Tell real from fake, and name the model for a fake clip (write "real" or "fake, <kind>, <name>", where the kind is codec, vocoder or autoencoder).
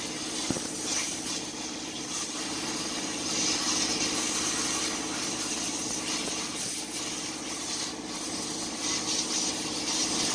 real